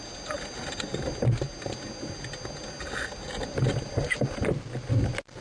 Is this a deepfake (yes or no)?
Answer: no